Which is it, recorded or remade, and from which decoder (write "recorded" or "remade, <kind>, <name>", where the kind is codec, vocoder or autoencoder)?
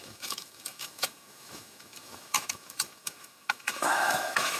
remade, autoencoder, DAC-VAE